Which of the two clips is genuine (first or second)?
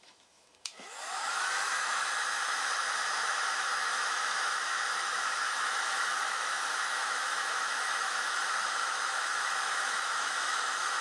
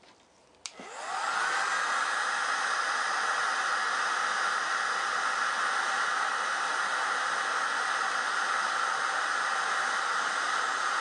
second